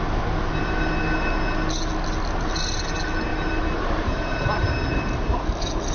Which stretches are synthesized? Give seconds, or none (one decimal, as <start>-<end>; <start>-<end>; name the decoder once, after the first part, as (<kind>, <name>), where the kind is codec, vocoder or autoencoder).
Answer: 3.3-4.7 (vocoder, BigVGAN v2)